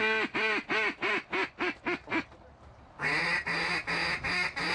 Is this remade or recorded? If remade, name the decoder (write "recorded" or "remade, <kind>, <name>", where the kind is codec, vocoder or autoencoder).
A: recorded